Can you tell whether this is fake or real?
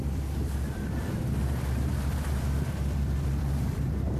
fake